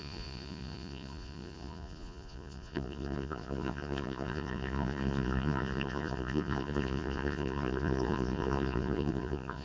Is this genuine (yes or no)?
no